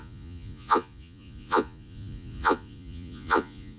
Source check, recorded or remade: remade